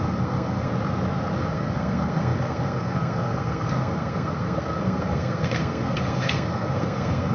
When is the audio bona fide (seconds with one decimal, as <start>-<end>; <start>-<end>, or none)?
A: 0.7-1.4